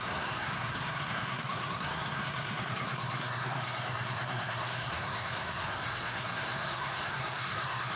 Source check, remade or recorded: remade